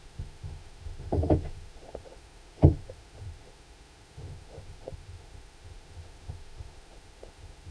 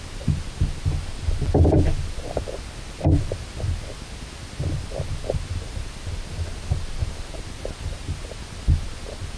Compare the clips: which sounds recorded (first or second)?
second